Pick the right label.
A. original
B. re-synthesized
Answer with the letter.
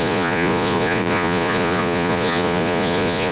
B